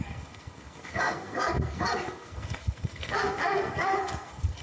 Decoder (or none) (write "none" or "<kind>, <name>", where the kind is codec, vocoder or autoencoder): codec, SNAC